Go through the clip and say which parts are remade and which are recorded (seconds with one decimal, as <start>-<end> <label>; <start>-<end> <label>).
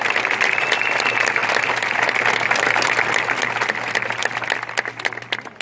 0.0-5.6 recorded